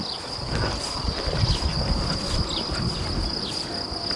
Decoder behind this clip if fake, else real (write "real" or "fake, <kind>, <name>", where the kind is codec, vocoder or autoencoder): real